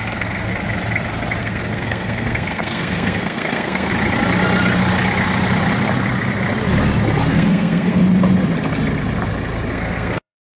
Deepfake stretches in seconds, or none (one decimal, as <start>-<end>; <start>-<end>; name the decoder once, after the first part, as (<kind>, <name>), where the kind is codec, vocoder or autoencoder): 0.0-0.5 (codec, SNAC); 1.4-3.9; 7.3-8.0; 9.7-10.6